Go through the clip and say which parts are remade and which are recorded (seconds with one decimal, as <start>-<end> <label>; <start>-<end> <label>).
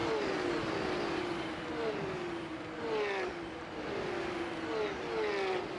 0.0-5.8 recorded